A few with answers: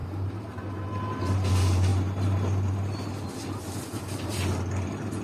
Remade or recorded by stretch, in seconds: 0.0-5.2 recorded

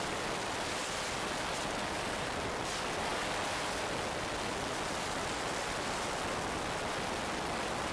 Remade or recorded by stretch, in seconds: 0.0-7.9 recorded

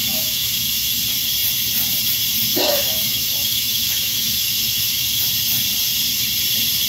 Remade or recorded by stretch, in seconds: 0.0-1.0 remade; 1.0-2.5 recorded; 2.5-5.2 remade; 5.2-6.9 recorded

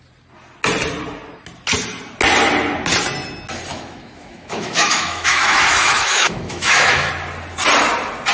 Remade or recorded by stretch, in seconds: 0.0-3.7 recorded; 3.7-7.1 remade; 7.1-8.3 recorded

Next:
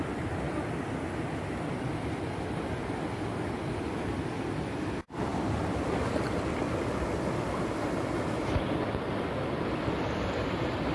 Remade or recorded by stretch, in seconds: 0.0-10.9 recorded

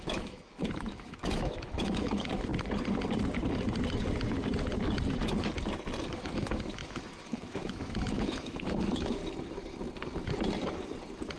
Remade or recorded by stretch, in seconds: 0.0-2.5 remade; 2.5-6.0 recorded; 6.0-9.2 remade; 9.2-11.4 recorded

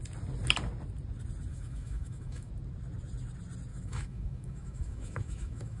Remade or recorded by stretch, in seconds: 0.0-1.5 recorded; 1.5-2.5 remade; 2.5-3.7 recorded; 3.7-5.8 remade

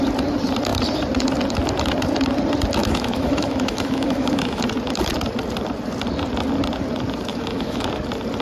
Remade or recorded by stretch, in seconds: 0.0-2.8 recorded; 2.8-4.6 remade; 4.6-7.3 recorded; 7.3-7.9 remade; 7.9-8.4 recorded